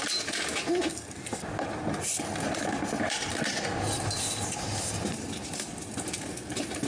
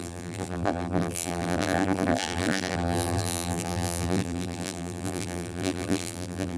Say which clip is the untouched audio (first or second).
first